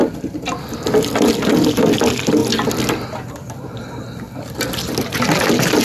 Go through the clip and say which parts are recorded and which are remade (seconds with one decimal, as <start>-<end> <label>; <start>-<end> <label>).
0.0-0.6 remade; 0.6-2.4 recorded; 2.4-5.8 remade